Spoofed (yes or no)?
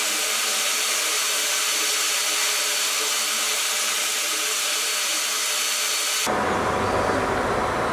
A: no